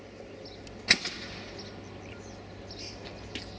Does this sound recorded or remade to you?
recorded